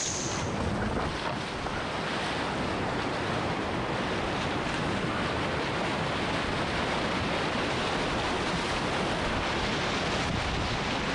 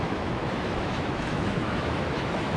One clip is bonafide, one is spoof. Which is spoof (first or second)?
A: second